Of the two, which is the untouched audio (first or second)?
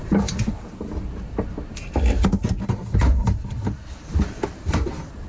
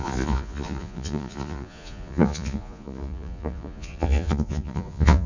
first